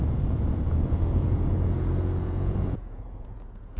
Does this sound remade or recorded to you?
remade